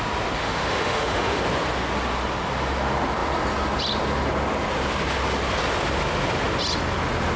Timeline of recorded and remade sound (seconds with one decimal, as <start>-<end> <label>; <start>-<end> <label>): 0.0-0.4 recorded; 0.4-1.4 remade; 1.4-7.4 recorded